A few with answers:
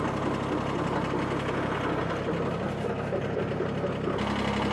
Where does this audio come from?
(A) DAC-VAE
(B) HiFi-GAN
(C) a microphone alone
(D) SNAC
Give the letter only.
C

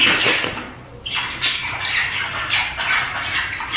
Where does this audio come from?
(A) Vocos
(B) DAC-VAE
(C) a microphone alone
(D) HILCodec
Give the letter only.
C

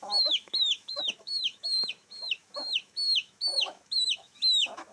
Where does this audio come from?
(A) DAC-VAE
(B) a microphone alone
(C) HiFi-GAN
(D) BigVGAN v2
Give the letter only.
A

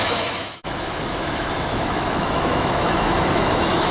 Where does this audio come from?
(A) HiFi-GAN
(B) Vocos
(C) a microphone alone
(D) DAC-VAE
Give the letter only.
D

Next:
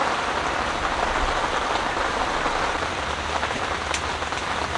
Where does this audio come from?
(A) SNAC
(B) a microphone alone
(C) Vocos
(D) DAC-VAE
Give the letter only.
B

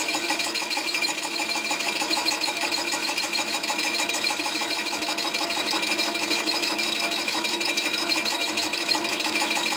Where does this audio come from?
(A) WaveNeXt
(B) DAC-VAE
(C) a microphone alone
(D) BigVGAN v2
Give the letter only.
B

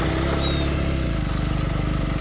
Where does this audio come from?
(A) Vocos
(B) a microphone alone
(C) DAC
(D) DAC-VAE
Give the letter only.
B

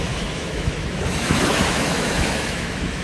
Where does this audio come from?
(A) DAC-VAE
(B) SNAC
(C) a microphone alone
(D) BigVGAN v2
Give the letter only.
A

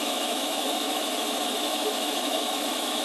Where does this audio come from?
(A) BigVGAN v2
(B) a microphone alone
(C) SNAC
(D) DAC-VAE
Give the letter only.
D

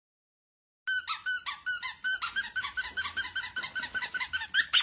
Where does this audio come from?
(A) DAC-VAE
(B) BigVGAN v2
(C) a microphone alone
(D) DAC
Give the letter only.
C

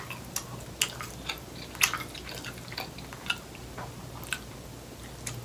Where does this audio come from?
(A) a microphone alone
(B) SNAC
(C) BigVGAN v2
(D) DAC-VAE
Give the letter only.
A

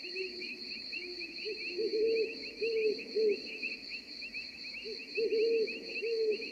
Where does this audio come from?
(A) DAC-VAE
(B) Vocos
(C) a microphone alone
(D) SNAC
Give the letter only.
A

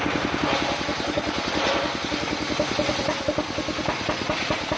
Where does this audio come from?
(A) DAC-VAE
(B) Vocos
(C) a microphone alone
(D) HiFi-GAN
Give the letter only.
C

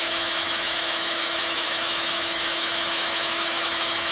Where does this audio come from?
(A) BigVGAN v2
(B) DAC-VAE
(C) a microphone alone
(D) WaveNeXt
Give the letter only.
B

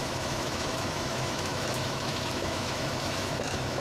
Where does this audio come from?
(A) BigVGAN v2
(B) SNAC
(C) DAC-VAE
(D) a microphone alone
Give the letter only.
C